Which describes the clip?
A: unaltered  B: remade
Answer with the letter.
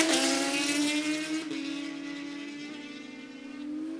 A